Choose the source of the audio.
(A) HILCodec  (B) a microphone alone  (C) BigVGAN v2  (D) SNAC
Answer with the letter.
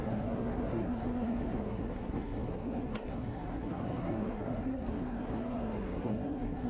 D